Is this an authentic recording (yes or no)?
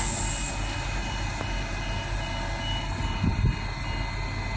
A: yes